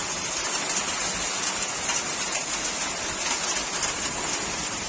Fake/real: real